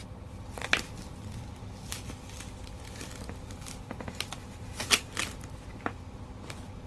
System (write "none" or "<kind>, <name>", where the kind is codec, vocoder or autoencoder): none